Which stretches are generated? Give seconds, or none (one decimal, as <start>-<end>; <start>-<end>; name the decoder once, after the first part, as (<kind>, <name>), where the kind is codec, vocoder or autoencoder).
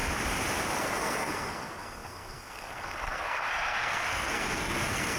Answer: 0.8-5.2 (codec, SNAC)